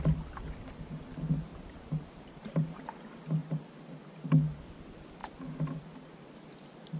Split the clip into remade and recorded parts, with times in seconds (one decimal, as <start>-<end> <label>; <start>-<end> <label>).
0.0-1.5 recorded; 1.5-2.8 remade; 2.8-7.0 recorded